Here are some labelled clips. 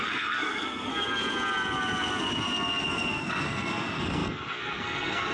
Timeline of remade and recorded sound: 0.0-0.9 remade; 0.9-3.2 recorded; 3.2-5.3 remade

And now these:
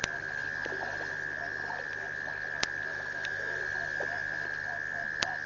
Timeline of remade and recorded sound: 0.0-2.9 recorded; 2.9-3.6 remade; 3.6-5.5 recorded

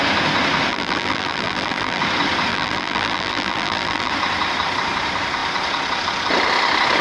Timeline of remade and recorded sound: 0.0-0.7 recorded; 0.7-2.0 remade; 2.0-2.5 recorded; 2.5-4.1 remade; 4.1-7.0 recorded

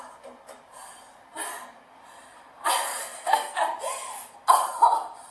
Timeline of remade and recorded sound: 0.0-3.0 recorded; 3.0-3.6 remade; 3.6-5.3 recorded